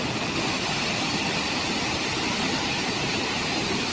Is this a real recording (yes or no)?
yes